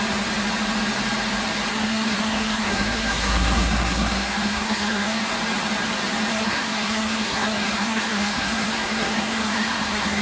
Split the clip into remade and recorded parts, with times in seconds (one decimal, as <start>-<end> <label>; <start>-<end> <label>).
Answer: 0.0-1.7 recorded; 1.7-5.3 remade; 5.3-6.3 recorded; 6.3-10.2 remade